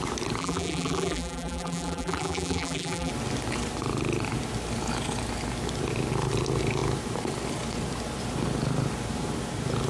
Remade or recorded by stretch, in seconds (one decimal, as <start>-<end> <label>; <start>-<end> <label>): 0.0-0.4 recorded; 0.4-3.1 remade; 3.1-9.9 recorded